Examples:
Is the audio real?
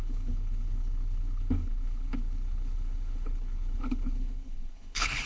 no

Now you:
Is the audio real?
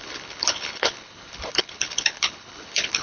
no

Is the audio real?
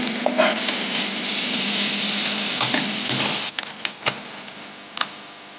yes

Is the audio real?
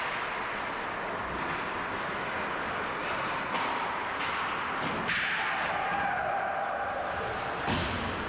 yes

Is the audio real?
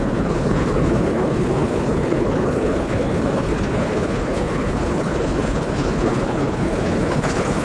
no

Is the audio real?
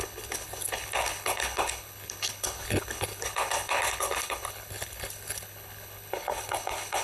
no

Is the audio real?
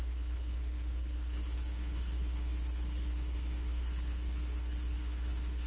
no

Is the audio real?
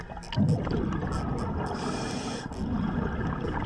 yes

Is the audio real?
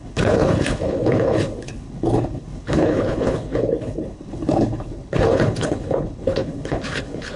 no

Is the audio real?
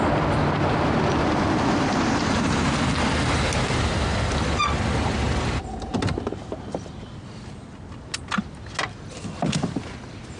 yes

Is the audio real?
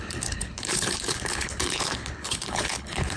no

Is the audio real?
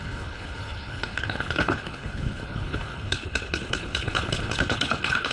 no